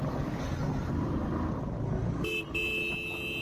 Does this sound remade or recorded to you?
recorded